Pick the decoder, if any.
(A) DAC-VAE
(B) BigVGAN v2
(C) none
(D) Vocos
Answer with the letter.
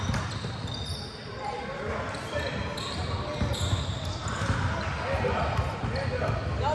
C